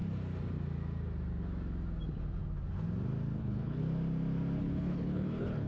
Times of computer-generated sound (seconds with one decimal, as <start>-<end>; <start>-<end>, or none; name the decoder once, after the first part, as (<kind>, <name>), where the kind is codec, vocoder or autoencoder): 3.4-3.8 (codec, HILCodec); 4.6-5.7